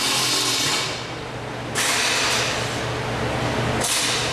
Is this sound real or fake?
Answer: real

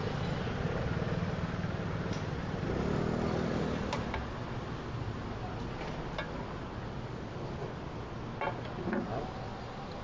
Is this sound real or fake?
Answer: real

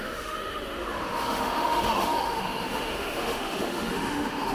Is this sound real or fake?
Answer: fake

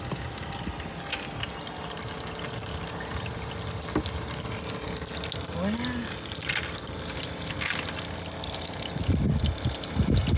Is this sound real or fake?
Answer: real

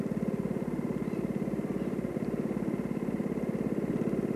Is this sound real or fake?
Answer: real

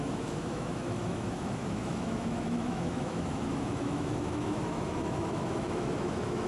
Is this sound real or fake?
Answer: fake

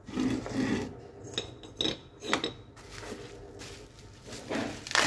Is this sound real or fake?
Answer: real